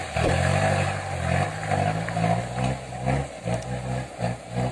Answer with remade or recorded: recorded